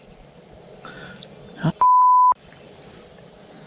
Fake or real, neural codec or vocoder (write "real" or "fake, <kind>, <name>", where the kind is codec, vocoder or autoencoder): real